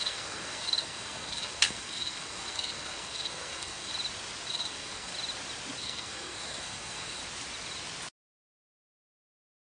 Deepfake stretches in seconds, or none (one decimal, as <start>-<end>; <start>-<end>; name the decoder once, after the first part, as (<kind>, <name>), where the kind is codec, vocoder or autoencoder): 0.0-3.9 (codec, SNAC); 4.5-5.1; 5.8-7.2; 8.1-9.7